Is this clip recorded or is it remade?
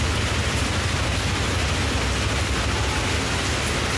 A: recorded